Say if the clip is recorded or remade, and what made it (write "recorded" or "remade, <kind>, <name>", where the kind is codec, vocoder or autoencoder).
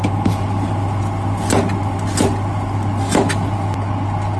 recorded